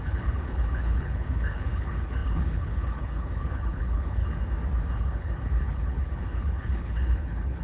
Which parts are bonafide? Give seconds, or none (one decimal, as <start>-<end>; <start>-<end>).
4.2-4.9